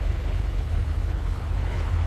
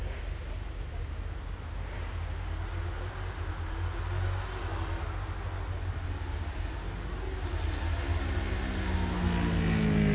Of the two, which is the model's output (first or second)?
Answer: first